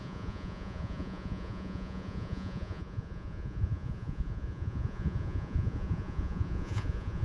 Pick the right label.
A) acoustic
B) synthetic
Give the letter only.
B